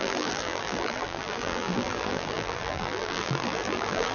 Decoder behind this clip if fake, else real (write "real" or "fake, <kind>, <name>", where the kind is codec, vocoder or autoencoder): fake, vocoder, BigVGAN v2